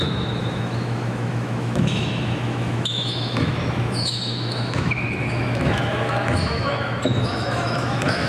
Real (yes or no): no